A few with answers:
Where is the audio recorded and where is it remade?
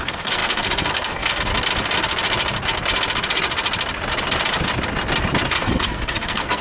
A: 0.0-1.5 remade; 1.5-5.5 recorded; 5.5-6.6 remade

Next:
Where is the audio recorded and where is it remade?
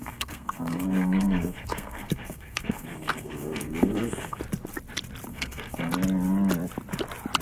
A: 0.0-4.4 remade; 4.4-5.3 recorded; 5.3-5.9 remade; 5.9-7.4 recorded